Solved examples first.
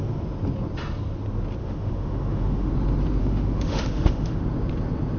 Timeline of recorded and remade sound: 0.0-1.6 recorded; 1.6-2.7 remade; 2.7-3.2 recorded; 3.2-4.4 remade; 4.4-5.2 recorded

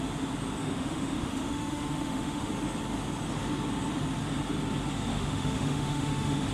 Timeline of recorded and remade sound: 0.0-0.6 recorded; 0.6-2.5 remade; 2.5-5.1 recorded; 5.1-6.5 remade

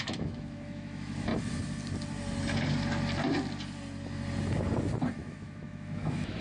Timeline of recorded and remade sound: 0.0-1.3 remade; 1.3-5.1 recorded; 5.1-6.4 remade